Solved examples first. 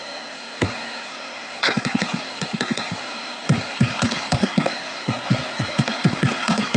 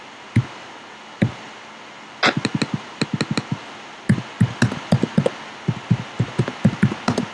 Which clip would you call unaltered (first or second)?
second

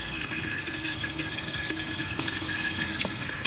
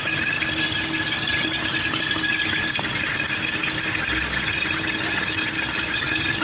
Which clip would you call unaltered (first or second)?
second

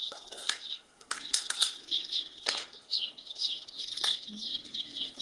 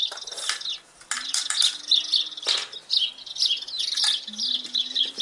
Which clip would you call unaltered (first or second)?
second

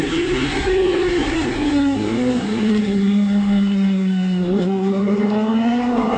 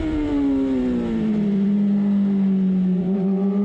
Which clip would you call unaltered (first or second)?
second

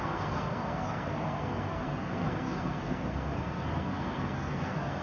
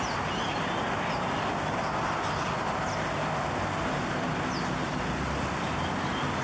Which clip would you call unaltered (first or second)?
second